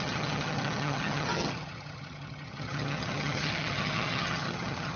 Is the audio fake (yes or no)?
yes